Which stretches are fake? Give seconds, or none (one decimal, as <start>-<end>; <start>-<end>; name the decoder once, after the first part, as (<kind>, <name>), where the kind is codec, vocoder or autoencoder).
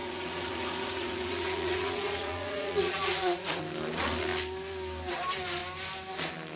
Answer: 0.0-3.6 (vocoder, Vocos)